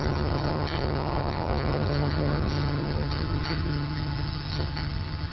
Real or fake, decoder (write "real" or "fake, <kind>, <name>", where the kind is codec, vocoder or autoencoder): fake, vocoder, HiFi-GAN